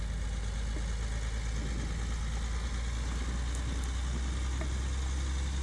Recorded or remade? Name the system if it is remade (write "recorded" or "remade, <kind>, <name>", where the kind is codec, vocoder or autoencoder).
recorded